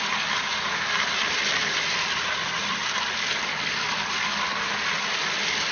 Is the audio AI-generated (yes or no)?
no